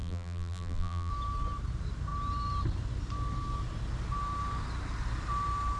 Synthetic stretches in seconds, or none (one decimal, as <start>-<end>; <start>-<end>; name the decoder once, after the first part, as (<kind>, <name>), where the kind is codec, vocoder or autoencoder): 0.0-1.1 (vocoder, BigVGAN v2)